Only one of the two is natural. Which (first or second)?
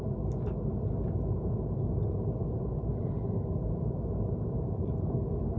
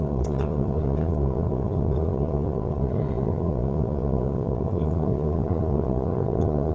first